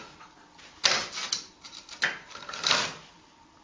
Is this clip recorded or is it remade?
remade